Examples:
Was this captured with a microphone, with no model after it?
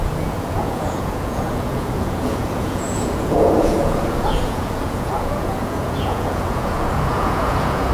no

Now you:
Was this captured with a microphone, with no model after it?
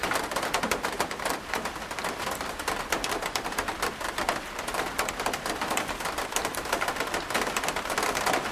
yes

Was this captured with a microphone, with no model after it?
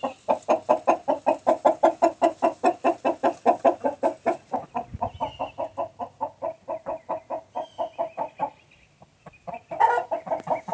yes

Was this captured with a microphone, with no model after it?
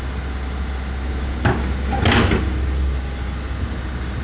yes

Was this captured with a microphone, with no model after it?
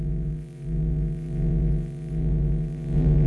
no